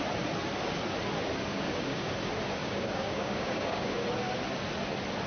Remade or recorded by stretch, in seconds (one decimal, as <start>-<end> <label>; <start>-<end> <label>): 0.0-1.5 recorded; 1.5-2.1 remade; 2.1-2.6 recorded; 2.6-4.0 remade; 4.0-5.3 recorded